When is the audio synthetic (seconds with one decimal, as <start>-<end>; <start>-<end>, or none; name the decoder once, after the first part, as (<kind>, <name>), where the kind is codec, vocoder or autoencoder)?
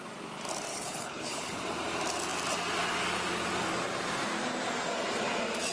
0.7-1.6 (codec, HILCodec)